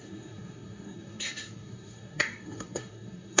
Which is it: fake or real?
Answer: fake